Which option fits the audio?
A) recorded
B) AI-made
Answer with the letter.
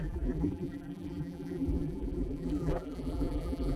B